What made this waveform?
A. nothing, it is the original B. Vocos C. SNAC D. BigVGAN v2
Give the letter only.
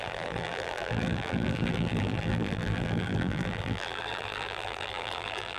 D